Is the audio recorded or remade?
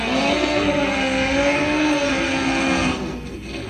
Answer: remade